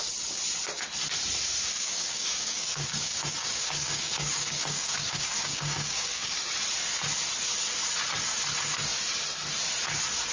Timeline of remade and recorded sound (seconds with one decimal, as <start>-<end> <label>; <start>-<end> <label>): 0.0-1.6 recorded; 1.6-6.4 remade; 6.4-10.3 recorded